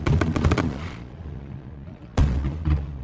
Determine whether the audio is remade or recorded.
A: remade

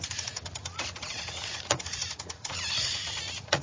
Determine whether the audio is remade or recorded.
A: remade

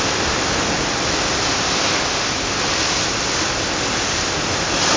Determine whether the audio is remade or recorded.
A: recorded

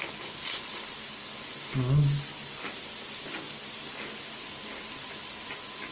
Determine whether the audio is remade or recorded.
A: recorded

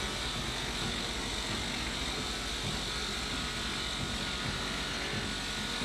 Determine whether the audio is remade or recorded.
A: recorded